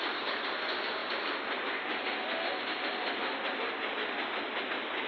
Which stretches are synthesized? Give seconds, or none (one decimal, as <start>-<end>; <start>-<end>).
none